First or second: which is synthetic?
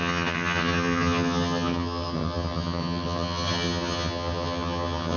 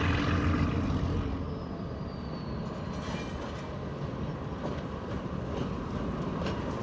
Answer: first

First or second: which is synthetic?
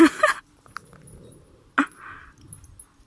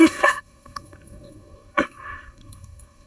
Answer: second